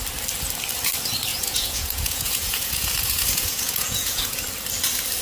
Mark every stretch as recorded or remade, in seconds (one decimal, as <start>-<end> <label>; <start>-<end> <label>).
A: 0.0-1.3 recorded; 1.3-4.4 remade; 4.4-5.2 recorded